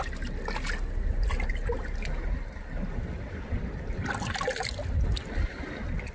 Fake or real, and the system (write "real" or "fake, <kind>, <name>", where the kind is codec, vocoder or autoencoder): real